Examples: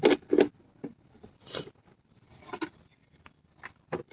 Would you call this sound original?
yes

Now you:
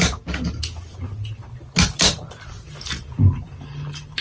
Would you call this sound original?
yes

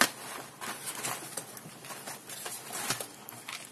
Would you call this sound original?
yes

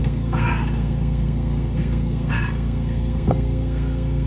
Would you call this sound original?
no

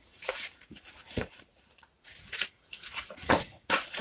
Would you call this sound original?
no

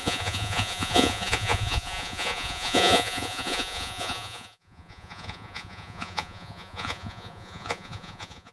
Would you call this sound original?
no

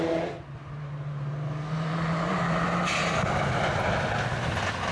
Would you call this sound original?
yes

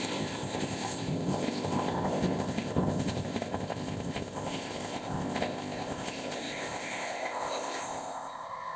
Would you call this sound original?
no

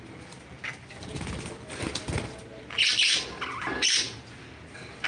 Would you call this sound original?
yes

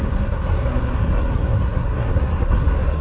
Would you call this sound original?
no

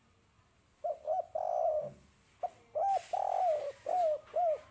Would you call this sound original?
yes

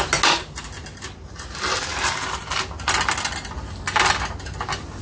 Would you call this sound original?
yes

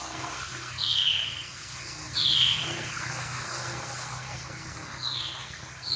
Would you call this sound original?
no